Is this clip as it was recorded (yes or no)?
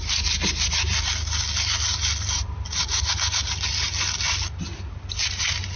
yes